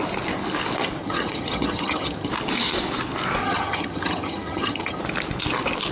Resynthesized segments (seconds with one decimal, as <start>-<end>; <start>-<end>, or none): 1.0-2.3; 3.4-5.0

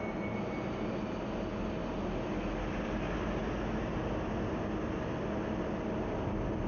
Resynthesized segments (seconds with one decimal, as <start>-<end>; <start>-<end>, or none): none

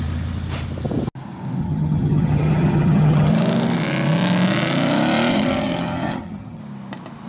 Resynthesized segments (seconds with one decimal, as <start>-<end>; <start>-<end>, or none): 1.6-3.3; 5.3-6.6

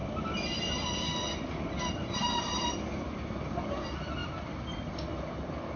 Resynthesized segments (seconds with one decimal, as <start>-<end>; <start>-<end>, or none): none

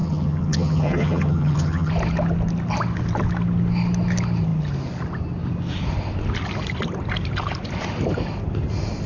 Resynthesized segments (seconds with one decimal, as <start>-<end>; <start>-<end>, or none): 0.0-1.9

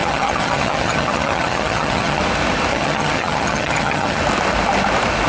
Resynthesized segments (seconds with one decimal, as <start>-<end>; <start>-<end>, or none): 0.0-2.2; 2.7-4.2